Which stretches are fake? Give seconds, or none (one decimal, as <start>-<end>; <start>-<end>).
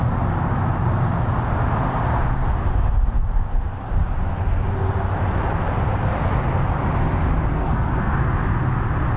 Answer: 7.5-8.1